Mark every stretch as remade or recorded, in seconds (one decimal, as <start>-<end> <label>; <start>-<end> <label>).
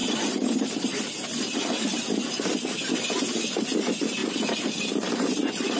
0.0-5.8 recorded